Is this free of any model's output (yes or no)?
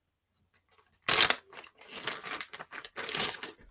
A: yes